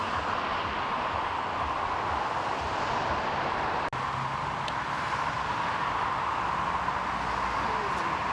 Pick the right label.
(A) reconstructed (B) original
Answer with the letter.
B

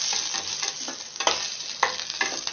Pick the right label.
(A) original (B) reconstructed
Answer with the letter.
A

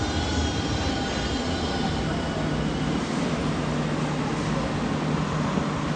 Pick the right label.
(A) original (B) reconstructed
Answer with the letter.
A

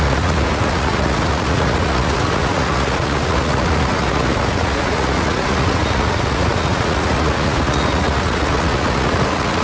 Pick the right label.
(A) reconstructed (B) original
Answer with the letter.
A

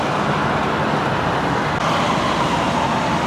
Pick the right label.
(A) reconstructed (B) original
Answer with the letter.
B